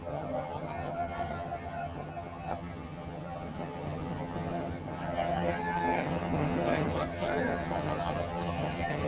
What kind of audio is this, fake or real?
fake